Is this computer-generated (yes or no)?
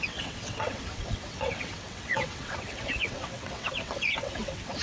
yes